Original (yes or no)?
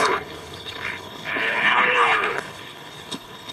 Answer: no